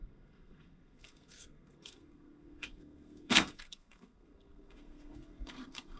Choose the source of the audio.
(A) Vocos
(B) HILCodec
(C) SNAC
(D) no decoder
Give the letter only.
C